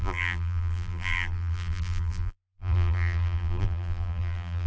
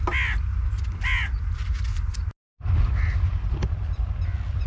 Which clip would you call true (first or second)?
second